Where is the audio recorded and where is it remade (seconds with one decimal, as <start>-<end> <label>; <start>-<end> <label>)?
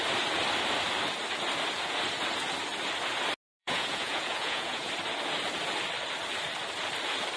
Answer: 0.0-3.6 recorded; 3.6-4.9 remade; 4.9-7.4 recorded